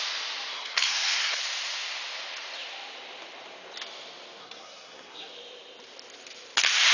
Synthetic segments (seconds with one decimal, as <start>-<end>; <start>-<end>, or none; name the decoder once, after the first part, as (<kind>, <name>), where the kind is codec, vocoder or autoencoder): 0.5-1.4 (codec, SNAC); 4.4-5.3